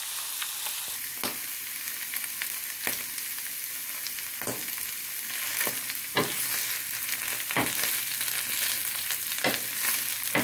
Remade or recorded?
recorded